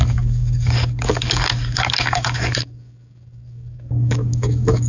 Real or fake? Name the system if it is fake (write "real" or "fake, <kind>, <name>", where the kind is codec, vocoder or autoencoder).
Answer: fake, codec, DAC